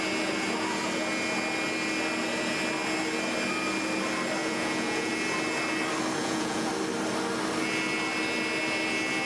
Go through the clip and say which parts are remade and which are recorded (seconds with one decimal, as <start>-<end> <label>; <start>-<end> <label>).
0.0-4.4 recorded; 4.4-5.1 remade; 5.1-6.2 recorded; 6.2-6.7 remade; 6.7-9.3 recorded